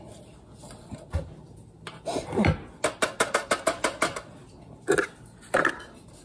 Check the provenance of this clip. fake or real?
real